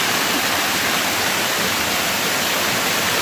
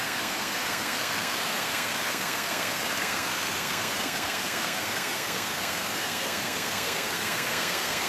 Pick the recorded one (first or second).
first